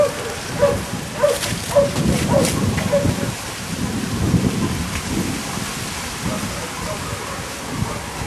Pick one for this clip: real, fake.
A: real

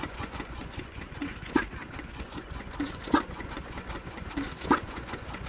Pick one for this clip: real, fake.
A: fake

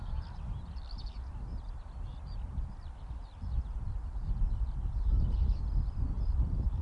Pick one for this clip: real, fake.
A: real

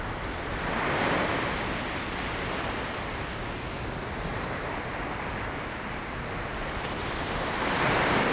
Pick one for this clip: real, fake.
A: real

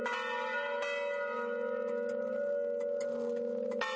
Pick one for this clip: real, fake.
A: real